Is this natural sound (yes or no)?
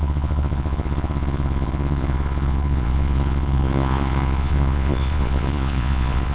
no